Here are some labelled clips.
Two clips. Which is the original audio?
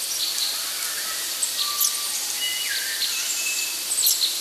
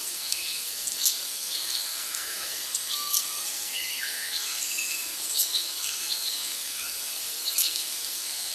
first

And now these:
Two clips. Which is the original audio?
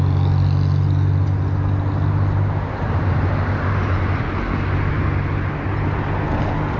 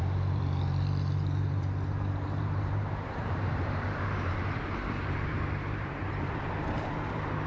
first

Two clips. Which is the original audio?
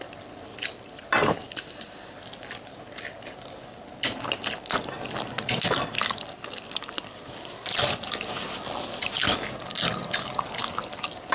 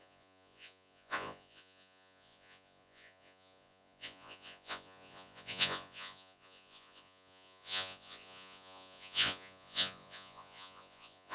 first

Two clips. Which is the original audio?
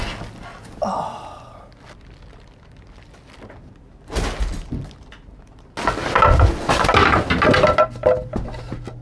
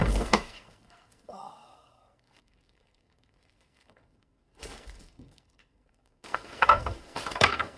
first